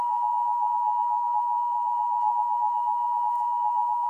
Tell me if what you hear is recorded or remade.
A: remade